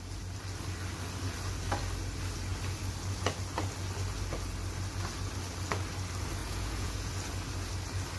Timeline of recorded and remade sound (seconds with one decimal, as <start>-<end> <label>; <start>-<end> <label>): 0.0-6.4 recorded; 6.4-7.1 remade; 7.1-8.2 recorded